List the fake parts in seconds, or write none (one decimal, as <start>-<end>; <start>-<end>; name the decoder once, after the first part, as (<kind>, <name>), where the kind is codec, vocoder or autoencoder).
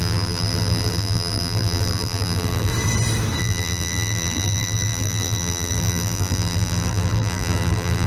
0.0-2.7 (vocoder, BigVGAN v2); 3.4-8.1